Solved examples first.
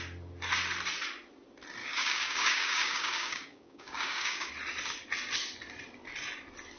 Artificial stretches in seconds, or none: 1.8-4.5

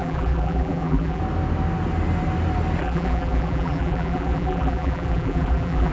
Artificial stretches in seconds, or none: 0.0-1.2; 2.8-5.9

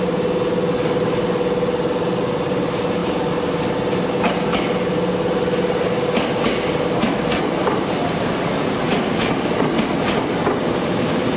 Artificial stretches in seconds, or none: none